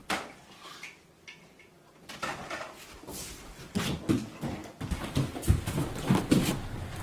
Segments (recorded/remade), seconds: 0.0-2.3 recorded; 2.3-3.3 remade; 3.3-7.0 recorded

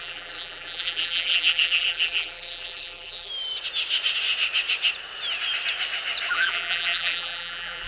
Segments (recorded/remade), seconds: 0.0-3.3 remade; 3.3-6.3 recorded; 6.3-7.9 remade